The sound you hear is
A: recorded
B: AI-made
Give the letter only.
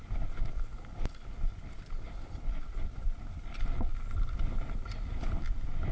A